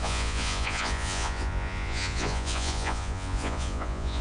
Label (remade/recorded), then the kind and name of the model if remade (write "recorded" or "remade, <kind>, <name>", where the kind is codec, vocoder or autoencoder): remade, vocoder, Vocos